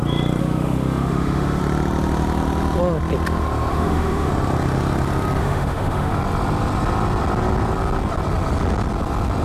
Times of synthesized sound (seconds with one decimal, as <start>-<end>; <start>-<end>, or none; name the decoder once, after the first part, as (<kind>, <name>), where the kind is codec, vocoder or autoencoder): 0.4-1.6 (autoencoder, DAC-VAE); 3.7-4.3; 5.4-6.1